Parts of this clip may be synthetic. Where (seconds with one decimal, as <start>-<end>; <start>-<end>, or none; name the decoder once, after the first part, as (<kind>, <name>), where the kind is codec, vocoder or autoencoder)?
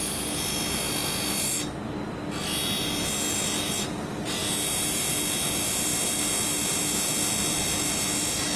none